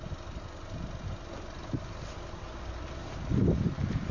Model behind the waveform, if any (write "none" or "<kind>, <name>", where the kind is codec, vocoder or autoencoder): none